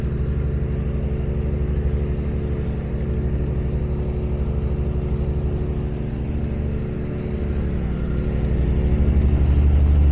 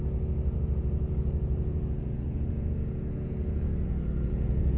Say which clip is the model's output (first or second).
second